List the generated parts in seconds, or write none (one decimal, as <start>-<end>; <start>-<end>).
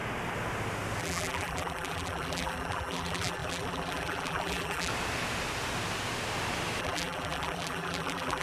1.0-4.9; 6.8-8.4